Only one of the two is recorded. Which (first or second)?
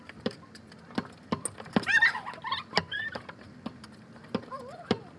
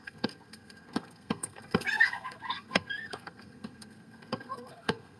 first